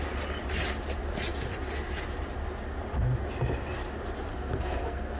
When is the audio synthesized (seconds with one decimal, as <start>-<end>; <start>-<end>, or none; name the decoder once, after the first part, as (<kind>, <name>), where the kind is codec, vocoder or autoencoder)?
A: 4.3-5.2 (codec, SNAC)